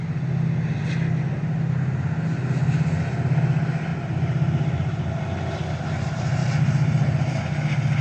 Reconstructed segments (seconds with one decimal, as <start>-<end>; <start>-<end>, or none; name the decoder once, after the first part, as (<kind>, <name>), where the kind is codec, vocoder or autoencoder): 3.9-5.1 (vocoder, BigVGAN v2); 6.4-7.4